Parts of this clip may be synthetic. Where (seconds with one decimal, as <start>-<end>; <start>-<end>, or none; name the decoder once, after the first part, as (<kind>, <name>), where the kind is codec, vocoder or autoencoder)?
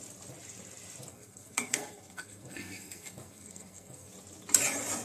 1.1-4.1 (codec, SNAC)